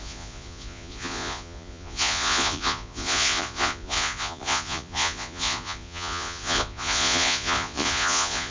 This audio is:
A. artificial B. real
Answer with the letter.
A